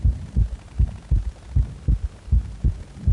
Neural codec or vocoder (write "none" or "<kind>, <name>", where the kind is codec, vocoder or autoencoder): none